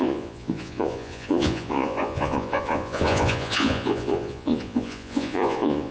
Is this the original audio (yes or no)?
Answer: no